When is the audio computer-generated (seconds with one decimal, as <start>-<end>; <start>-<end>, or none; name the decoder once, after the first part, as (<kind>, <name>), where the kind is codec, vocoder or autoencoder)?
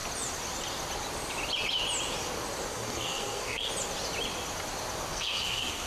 2.7-3.7 (codec, SNAC); 5.1-5.9